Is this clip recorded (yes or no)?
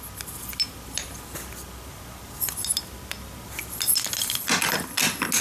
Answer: yes